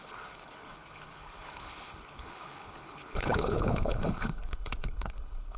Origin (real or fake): fake